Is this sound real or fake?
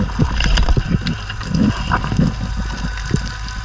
real